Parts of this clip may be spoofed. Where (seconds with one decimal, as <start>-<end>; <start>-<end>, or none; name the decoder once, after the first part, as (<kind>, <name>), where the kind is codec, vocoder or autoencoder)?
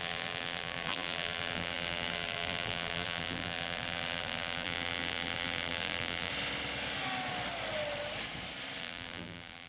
0.0-6.3 (vocoder, BigVGAN v2); 8.8-9.7